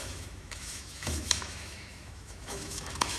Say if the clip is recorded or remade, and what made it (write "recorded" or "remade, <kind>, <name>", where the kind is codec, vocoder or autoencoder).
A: remade, autoencoder, DAC-VAE